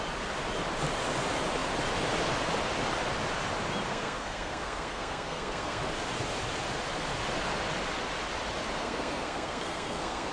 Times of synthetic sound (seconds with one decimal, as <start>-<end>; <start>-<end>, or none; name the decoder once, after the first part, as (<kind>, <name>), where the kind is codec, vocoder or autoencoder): 3.9-5.8 (codec, SNAC); 8.8-10.3